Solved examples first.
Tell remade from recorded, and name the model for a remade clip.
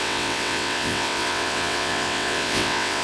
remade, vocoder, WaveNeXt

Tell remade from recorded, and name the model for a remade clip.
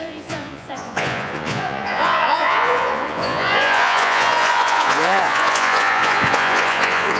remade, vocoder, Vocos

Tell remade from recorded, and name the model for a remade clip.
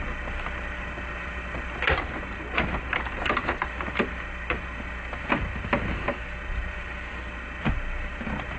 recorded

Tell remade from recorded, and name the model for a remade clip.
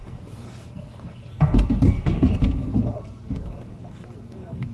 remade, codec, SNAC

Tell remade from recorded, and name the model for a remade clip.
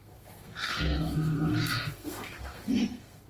remade, codec, SNAC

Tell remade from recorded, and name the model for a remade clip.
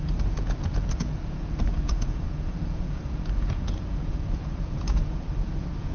remade, vocoder, Vocos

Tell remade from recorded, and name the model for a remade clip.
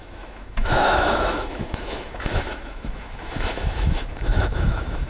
remade, autoencoder, DAC-VAE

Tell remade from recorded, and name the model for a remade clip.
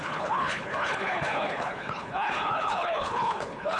remade, codec, HILCodec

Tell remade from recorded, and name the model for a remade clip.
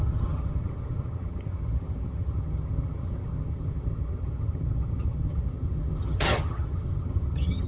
remade, vocoder, HiFi-GAN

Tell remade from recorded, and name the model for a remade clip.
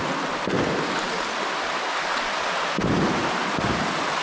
recorded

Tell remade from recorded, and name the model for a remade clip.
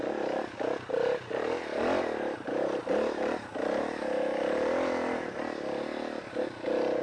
recorded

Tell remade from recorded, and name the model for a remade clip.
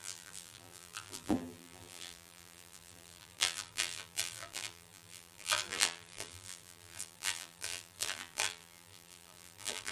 remade, vocoder, BigVGAN v2